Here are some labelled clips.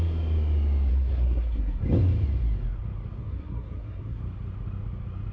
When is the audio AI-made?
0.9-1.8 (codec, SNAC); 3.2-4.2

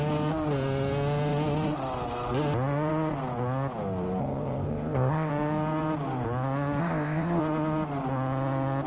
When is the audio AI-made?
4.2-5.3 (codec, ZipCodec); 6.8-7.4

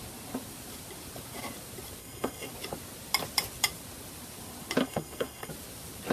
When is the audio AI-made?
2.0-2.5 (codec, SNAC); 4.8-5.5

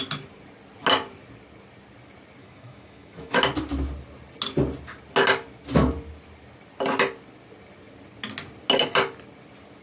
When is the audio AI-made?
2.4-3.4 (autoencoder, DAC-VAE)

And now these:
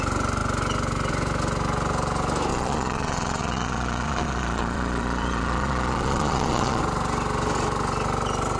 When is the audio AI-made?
2.5-6.8 (vocoder, Vocos)

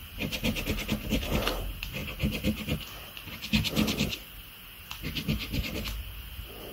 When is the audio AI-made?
5.4-6.7 (vocoder, BigVGAN v2)

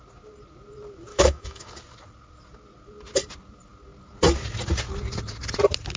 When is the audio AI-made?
1.1-1.7 (autoencoder, DAC-VAE)